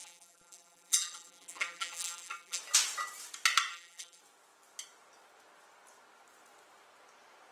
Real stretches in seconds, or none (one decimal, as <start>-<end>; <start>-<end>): 2.6-3.7; 4.2-7.5